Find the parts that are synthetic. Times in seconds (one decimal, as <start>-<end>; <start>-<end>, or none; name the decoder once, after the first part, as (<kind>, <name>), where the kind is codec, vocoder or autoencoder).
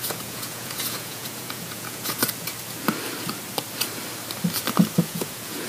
0.0-2.2 (vocoder, Vocos); 5.0-5.7